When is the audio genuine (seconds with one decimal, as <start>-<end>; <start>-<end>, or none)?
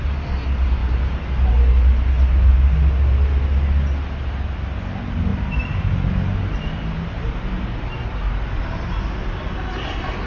0.0-10.3